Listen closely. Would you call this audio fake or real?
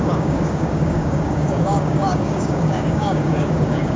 fake